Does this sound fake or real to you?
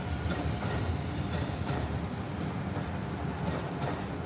real